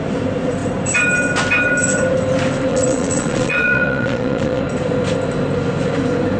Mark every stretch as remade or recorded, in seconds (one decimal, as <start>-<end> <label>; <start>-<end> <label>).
0.0-2.7 recorded; 2.7-4.6 remade; 4.6-6.4 recorded